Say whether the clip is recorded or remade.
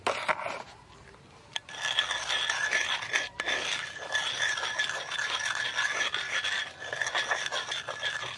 recorded